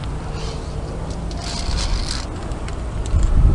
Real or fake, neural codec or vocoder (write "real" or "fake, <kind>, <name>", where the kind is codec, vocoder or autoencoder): real